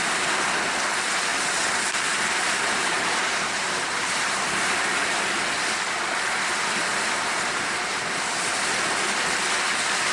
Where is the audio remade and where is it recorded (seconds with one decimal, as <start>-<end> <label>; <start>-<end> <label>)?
0.0-1.3 recorded; 1.3-5.2 remade; 5.2-6.9 recorded; 6.9-7.9 remade; 7.9-10.1 recorded